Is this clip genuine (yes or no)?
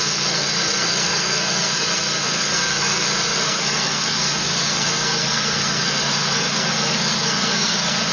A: no